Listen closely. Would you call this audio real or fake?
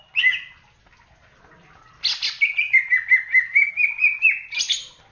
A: real